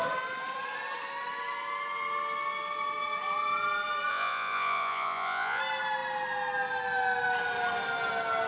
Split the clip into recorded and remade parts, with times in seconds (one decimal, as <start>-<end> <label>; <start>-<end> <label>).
0.0-4.1 recorded; 4.1-5.6 remade; 5.6-8.5 recorded